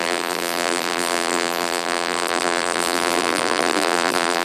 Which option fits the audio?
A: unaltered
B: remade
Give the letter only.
B